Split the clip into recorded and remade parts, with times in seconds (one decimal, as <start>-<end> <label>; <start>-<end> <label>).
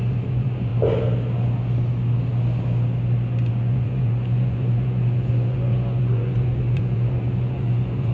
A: 0.0-0.7 remade; 0.7-3.5 recorded; 3.5-8.1 remade